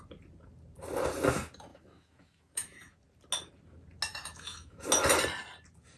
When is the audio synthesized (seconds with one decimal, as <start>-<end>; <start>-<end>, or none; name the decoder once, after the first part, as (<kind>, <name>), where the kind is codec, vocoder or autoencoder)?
1.7-3.0 (autoencoder, DAC-VAE); 4.1-4.8